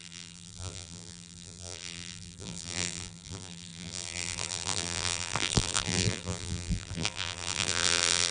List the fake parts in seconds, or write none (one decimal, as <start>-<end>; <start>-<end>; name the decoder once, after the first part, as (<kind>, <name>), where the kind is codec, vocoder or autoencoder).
0.0-8.3 (vocoder, BigVGAN v2)